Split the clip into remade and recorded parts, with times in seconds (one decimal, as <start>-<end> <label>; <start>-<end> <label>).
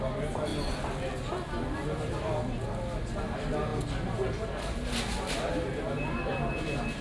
0.0-7.0 recorded